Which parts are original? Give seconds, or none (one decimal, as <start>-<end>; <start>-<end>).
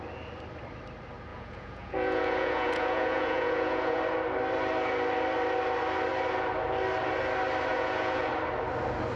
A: 0.0-1.3; 4.0-7.7; 8.3-9.2